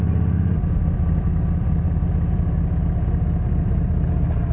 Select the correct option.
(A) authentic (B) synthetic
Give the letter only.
A